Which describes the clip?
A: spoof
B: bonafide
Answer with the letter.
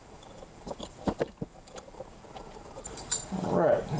A